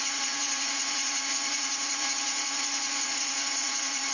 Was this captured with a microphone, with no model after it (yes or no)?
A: no